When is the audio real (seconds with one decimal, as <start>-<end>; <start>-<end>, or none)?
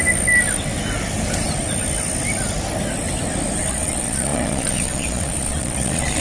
0.0-3.7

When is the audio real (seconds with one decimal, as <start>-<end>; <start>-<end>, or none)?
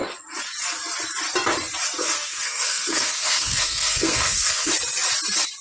0.0-2.0; 4.7-5.6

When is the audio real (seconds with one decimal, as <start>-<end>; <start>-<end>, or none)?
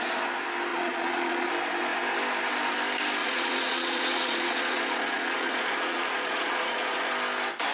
0.0-0.7; 1.5-3.2; 7.1-7.7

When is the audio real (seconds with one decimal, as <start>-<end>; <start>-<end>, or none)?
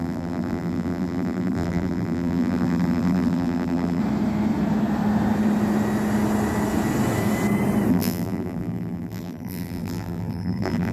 4.0-7.9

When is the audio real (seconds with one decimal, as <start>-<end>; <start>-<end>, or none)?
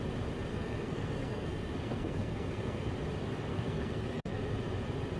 0.0-0.5; 2.9-3.5; 4.4-5.2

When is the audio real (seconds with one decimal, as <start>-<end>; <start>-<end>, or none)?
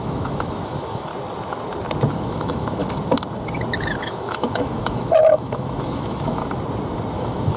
1.1-2.1; 2.8-3.8; 6.4-7.1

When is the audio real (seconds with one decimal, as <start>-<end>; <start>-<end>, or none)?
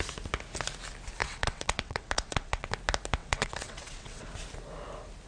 0.0-1.2; 2.7-3.2; 4.3-5.3